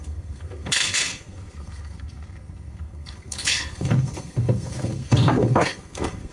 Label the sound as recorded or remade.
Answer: remade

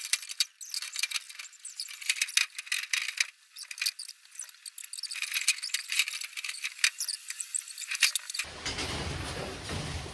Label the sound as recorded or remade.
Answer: recorded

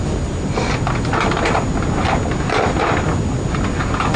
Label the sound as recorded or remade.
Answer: recorded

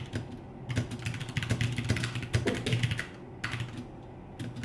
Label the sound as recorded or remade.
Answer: recorded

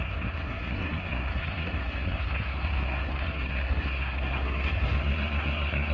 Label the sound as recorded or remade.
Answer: remade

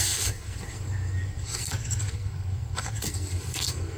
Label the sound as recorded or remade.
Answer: remade